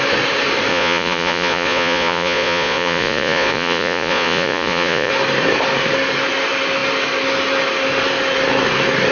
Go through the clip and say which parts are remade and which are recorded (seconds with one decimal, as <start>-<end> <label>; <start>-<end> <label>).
0.0-0.7 recorded; 0.7-5.1 remade; 5.1-9.1 recorded